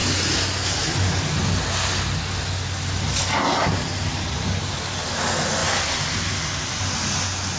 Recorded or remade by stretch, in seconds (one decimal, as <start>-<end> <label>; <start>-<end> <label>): 0.0-7.6 recorded